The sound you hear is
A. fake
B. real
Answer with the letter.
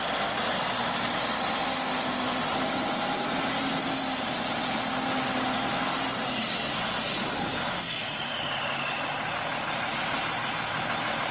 B